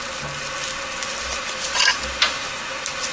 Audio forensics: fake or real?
real